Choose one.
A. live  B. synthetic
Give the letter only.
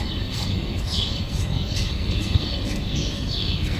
B